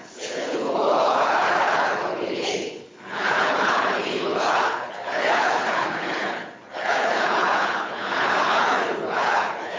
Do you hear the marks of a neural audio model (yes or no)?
yes